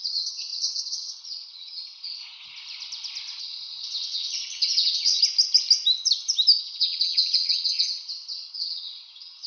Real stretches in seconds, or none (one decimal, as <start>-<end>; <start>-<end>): 2.2-3.4; 5.2-6.6